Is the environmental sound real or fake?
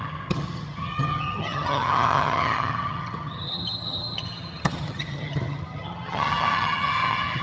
fake